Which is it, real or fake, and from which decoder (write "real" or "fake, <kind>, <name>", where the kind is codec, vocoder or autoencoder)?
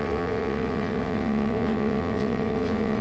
fake, vocoder, WaveNeXt